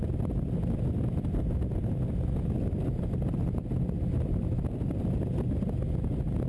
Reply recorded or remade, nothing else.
recorded